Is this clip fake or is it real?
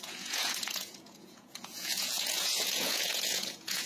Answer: fake